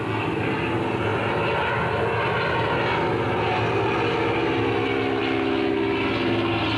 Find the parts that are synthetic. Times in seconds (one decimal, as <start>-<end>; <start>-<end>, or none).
none

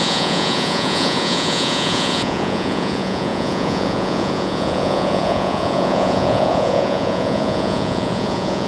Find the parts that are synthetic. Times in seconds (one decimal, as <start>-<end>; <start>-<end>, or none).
0.0-8.7

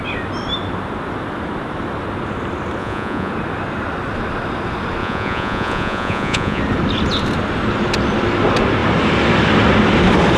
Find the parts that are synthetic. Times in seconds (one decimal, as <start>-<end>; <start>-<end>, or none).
2.8-3.3; 5.0-6.6

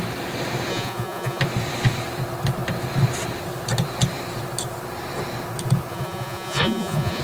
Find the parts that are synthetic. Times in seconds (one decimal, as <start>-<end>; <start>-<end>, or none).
0.7-1.4; 5.9-7.2